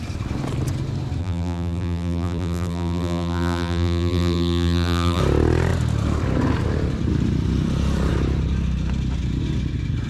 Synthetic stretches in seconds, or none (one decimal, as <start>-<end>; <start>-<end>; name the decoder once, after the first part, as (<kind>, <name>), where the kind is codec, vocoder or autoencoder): 1.2-5.2 (vocoder, BigVGAN v2)